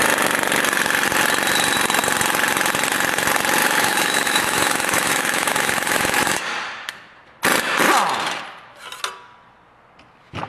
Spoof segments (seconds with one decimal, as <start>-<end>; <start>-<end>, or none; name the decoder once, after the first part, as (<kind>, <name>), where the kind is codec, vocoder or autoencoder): 3.6-6.4 (autoencoder, DAC-VAE)